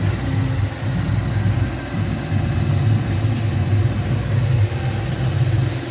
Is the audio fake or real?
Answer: real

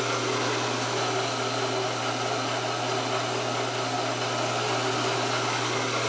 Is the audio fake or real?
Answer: real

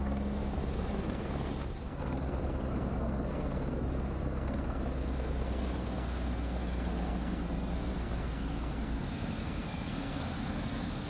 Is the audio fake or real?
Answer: fake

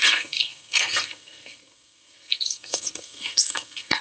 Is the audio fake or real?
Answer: fake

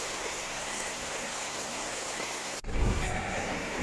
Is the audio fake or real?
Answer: fake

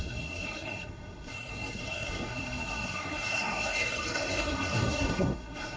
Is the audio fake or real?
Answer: fake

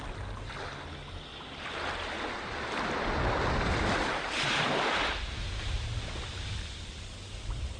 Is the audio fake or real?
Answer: real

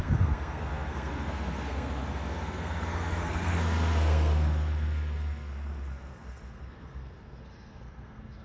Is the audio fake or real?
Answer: fake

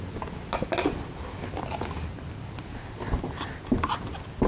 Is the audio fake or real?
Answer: real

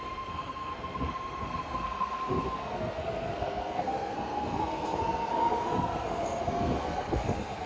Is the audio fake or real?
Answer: fake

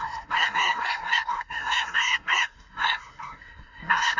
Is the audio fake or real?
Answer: fake